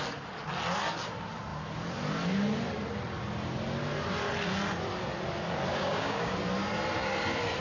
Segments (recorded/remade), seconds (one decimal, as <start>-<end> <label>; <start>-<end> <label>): 0.0-5.7 recorded; 5.7-6.3 remade; 6.3-7.6 recorded